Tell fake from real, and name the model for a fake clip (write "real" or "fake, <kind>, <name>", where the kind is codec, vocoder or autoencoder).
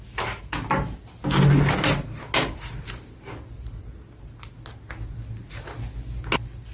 real